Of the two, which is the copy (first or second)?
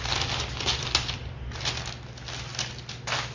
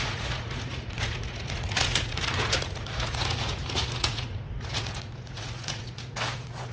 second